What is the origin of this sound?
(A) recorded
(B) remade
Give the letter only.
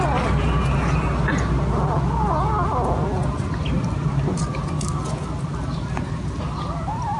A